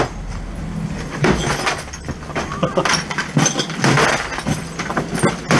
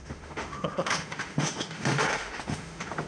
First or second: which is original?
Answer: first